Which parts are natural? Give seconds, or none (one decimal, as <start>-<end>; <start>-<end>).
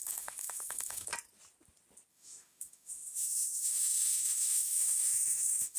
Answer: 1.1-2.1